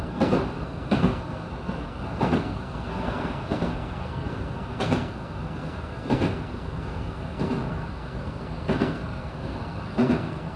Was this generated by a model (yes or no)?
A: yes